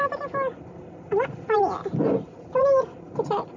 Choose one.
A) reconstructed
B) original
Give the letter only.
A